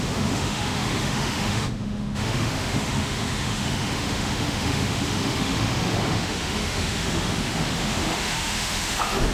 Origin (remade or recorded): remade